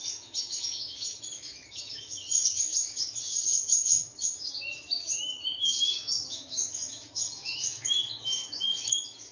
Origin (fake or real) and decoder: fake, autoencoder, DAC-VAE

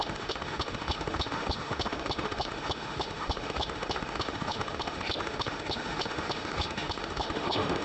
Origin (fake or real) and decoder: fake, autoencoder, DAC-VAE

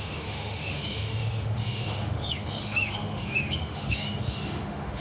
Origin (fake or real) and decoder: fake, autoencoder, DAC-VAE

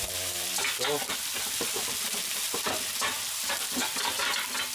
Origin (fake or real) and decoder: real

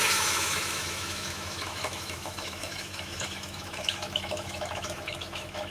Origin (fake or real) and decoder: fake, autoencoder, DAC-VAE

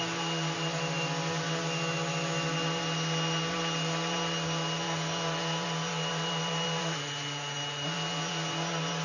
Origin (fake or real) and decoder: real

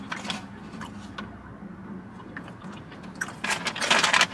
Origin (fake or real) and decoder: real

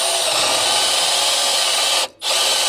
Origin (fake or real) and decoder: real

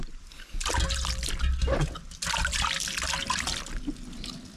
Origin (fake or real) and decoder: real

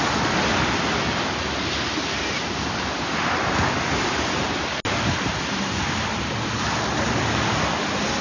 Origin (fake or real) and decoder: real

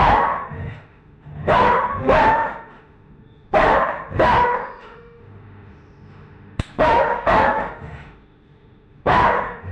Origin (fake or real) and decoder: fake, autoencoder, DAC-VAE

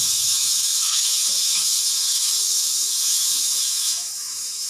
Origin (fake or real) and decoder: fake, autoencoder, DAC-VAE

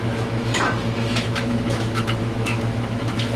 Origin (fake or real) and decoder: fake, autoencoder, DAC-VAE